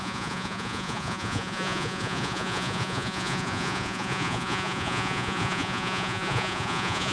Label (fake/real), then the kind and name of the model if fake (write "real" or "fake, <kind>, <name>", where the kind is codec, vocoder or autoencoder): fake, vocoder, Vocos